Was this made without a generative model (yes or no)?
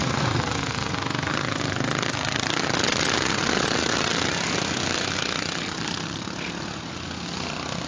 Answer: yes